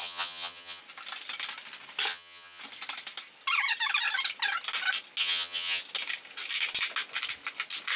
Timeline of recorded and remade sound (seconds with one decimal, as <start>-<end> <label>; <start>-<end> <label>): 0.0-0.8 remade; 0.8-2.1 recorded; 2.1-2.6 remade; 2.6-5.2 recorded; 5.2-5.8 remade; 5.8-8.0 recorded